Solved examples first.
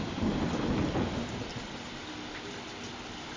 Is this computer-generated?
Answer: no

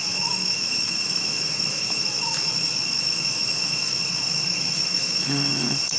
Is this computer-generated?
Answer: yes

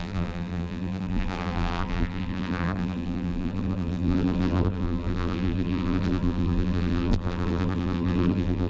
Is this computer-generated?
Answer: yes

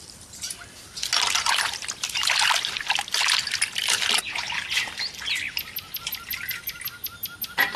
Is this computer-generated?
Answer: no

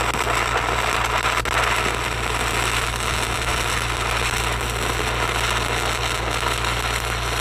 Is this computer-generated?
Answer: no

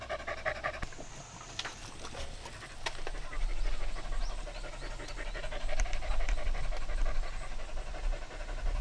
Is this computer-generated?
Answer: no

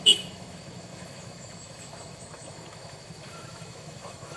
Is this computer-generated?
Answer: yes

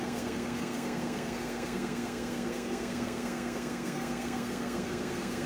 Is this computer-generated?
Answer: yes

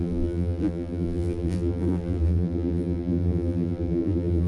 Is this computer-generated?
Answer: yes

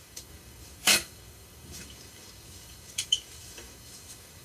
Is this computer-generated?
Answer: yes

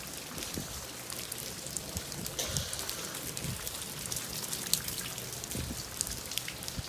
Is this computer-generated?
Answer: no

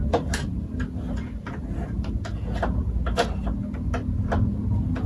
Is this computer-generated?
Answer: no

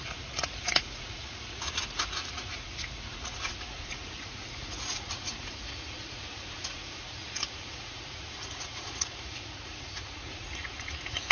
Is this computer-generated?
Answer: yes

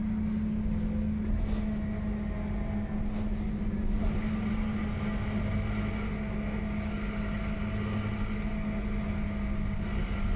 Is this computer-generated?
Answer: no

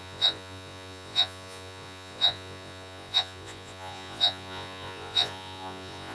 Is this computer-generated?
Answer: yes